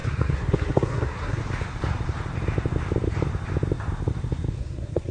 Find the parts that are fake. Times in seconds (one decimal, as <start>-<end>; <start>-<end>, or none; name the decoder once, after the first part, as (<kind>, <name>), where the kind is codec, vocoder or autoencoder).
0.0-1.4 (codec, SNAC); 4.5-5.1